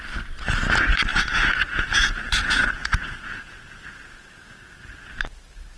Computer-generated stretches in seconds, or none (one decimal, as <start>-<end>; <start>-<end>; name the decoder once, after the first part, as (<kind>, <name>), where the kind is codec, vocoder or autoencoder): 1.1-4.6 (vocoder, Vocos)